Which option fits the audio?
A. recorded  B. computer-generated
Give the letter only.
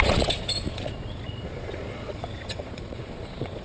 B